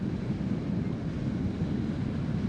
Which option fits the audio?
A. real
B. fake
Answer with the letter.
A